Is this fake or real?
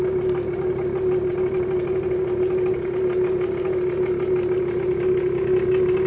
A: real